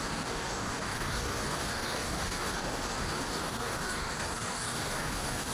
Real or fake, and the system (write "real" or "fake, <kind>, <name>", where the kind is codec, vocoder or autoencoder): fake, codec, DAC